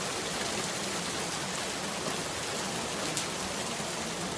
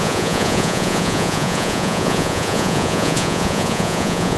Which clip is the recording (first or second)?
first